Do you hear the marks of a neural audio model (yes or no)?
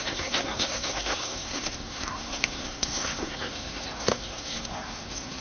yes